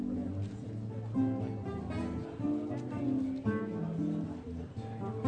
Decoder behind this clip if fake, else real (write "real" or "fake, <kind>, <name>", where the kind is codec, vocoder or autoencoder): real